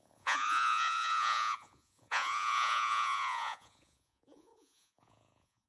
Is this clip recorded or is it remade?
remade